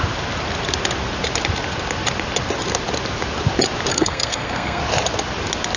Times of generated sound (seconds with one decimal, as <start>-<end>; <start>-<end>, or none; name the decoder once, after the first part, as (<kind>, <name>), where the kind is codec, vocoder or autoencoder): 3.9-4.8 (codec, SNAC)